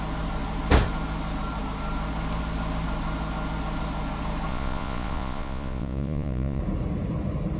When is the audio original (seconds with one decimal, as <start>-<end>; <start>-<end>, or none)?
0.0-4.5; 6.6-7.6